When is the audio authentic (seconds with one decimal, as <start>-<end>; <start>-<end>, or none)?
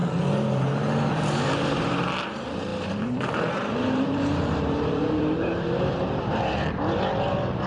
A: 0.0-1.1